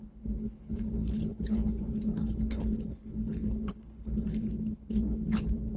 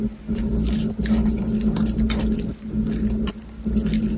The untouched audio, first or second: second